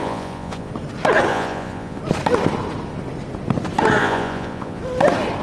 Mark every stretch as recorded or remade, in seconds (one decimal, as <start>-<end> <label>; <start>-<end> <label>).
0.0-0.7 remade; 0.7-1.3 recorded; 1.3-2.0 remade; 2.0-4.0 recorded; 4.0-4.8 remade; 4.8-5.4 recorded